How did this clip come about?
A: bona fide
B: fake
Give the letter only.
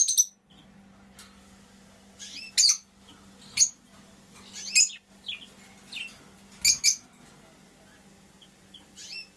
A